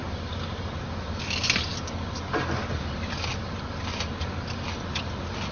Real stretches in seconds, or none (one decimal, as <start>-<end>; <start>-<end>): 0.0-5.5